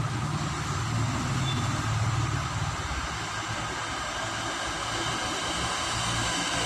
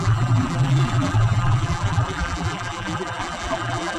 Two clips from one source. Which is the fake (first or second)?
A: second